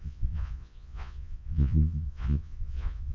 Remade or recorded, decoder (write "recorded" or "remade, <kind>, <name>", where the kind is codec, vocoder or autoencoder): remade, vocoder, Vocos